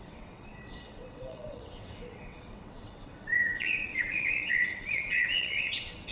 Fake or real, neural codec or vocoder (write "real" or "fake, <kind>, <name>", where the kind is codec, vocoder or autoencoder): fake, vocoder, WaveNeXt